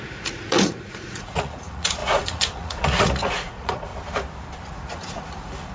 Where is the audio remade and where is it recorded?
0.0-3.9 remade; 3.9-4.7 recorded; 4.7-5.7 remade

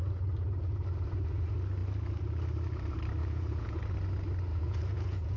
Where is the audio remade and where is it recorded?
0.0-3.2 recorded; 3.2-3.9 remade; 3.9-4.5 recorded; 4.5-5.4 remade

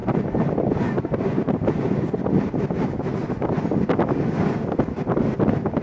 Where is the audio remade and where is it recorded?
0.0-5.8 recorded

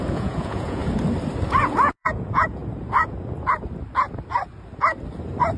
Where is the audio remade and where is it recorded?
0.0-0.8 remade; 0.8-1.5 recorded; 1.5-2.6 remade; 2.6-5.6 recorded

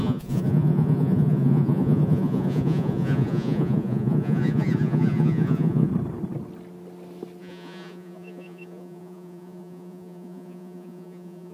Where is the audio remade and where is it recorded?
0.0-5.9 remade; 5.9-7.4 recorded; 7.4-11.5 remade

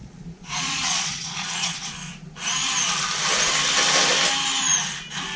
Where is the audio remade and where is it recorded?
0.0-1.9 remade; 1.9-5.4 recorded

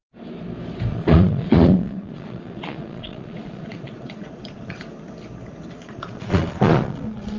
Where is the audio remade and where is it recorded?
0.0-0.9 recorded; 0.9-4.9 remade; 4.9-5.8 recorded; 5.8-7.4 remade